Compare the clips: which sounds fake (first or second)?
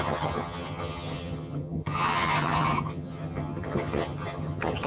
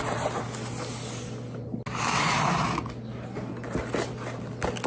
first